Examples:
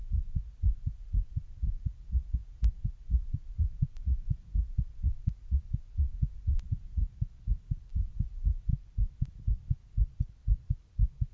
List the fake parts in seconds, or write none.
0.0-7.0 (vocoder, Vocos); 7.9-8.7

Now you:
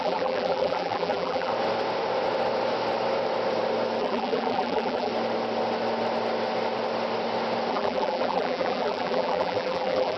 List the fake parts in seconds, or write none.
0.0-1.5 (vocoder, BigVGAN v2); 4.0-5.1; 7.7-10.2

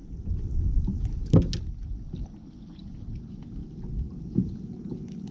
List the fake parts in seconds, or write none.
none

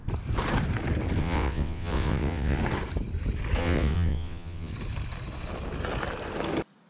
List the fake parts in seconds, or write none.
1.2-2.6 (vocoder, WaveNeXt); 3.6-4.7